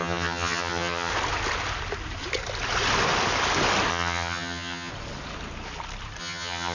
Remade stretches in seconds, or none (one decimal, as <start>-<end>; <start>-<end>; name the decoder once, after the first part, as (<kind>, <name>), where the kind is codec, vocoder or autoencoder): 0.0-1.1 (vocoder, HiFi-GAN); 3.9-4.9; 6.2-6.7